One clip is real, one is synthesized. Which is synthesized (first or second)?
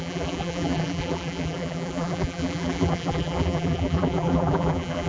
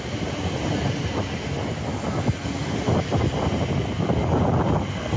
first